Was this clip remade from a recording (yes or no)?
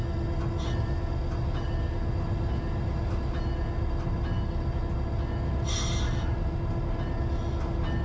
no